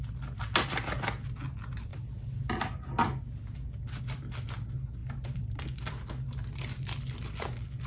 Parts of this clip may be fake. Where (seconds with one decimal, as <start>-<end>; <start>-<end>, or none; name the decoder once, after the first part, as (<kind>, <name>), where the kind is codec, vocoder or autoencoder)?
none